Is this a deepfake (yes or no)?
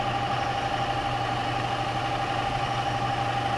no